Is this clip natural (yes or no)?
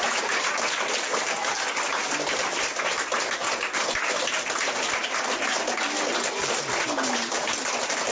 yes